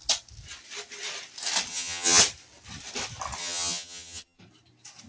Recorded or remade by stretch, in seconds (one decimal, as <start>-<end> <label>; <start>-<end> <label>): 0.0-1.7 recorded; 1.7-2.2 remade; 2.2-3.4 recorded; 3.4-4.4 remade; 4.4-5.1 recorded